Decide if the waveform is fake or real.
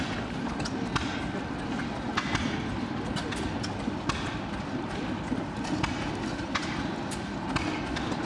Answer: real